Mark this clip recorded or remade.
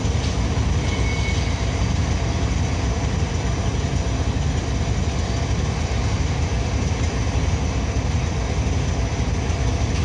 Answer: recorded